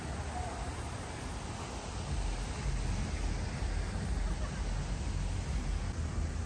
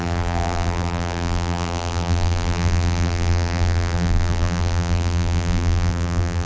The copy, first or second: second